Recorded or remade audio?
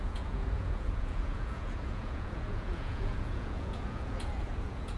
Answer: remade